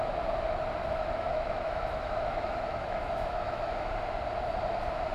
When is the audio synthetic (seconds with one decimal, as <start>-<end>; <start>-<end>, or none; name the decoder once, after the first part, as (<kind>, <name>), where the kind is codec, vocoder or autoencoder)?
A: 0.8-3.9 (autoencoder, DAC-VAE)